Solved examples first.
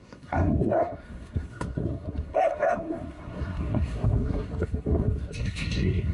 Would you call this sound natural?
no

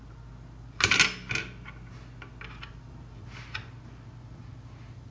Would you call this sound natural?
yes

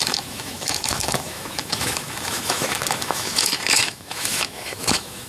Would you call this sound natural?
no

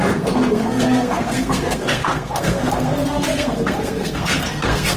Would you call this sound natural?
no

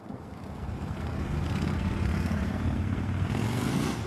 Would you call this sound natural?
no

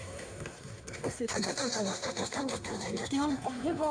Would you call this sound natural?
no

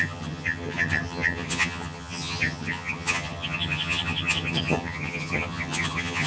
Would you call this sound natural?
no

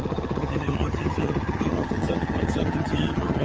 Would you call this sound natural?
no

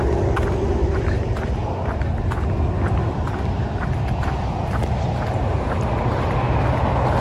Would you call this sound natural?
yes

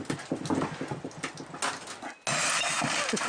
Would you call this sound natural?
yes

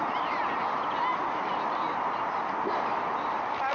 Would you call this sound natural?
yes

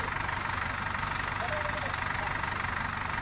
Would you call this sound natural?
yes